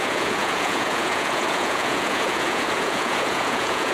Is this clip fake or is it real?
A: fake